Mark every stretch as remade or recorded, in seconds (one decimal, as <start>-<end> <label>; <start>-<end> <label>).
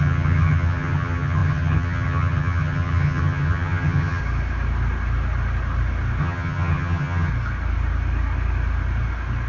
0.0-4.2 remade; 4.2-6.2 recorded; 6.2-7.3 remade; 7.3-9.5 recorded